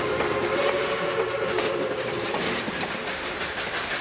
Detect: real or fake fake